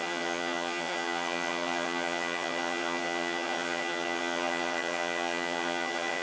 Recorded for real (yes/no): no